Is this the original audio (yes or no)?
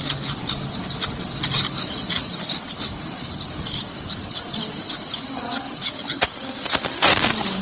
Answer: yes